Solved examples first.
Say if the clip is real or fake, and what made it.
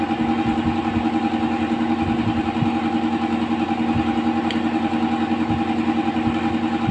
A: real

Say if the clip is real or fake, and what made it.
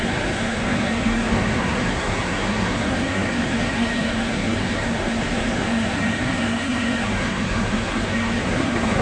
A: fake, codec, SNAC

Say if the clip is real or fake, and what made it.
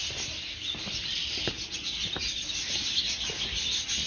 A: real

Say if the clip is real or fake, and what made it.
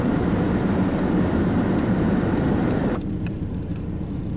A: fake, vocoder, BigVGAN v2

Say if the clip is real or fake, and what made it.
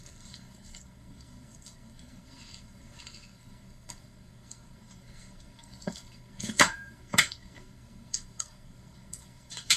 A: fake, codec, SNAC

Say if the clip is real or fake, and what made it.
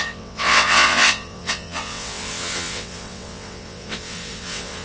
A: fake, vocoder, WaveNeXt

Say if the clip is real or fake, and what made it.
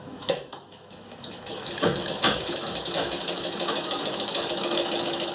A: fake, autoencoder, DAC-VAE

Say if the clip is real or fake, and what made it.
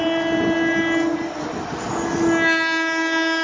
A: real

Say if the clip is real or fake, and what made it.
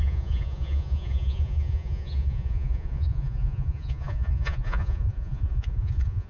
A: fake, vocoder, Vocos